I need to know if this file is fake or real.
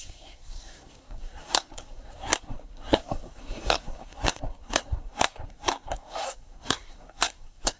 fake